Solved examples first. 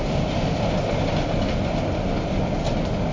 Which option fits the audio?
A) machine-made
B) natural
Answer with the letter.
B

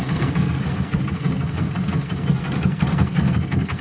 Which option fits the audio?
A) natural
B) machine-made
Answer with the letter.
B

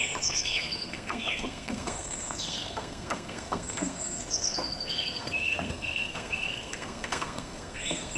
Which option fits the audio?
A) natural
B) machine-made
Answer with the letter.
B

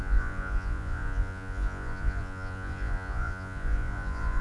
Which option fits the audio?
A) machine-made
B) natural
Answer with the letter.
A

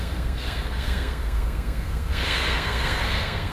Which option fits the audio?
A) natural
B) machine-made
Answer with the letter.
B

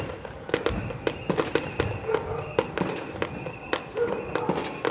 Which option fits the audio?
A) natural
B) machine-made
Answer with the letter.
A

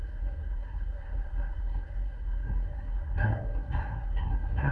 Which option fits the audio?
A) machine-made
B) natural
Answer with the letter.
A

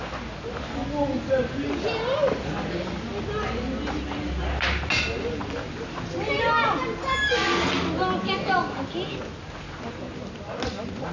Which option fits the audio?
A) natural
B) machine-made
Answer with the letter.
A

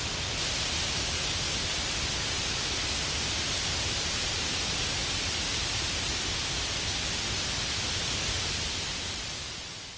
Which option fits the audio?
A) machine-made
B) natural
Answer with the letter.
B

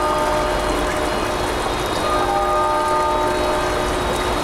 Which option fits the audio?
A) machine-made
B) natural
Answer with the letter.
B